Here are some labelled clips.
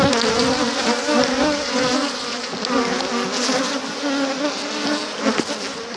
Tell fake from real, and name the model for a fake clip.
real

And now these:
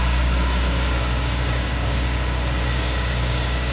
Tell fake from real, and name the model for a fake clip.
fake, codec, DAC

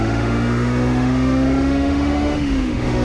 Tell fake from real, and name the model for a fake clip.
fake, autoencoder, DAC-VAE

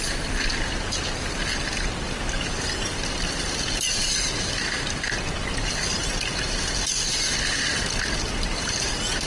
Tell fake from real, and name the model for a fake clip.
real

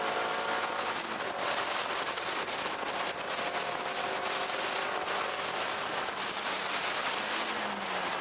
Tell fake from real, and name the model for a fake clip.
real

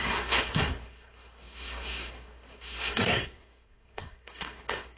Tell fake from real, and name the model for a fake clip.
fake, codec, SNAC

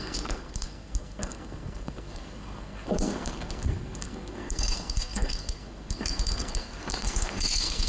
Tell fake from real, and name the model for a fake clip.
fake, codec, SNAC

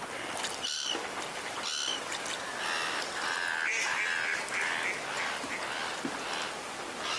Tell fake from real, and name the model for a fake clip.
real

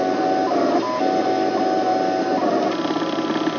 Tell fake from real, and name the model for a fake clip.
real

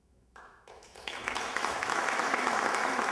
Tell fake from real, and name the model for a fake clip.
fake, autoencoder, DAC-VAE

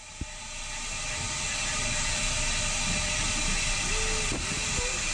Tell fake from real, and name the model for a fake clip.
real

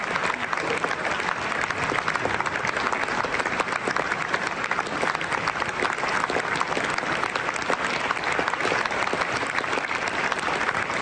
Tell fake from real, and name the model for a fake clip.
real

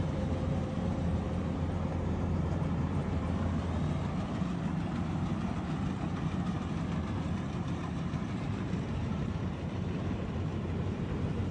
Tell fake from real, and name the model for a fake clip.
fake, vocoder, BigVGAN v2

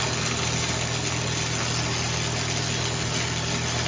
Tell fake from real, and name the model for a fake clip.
real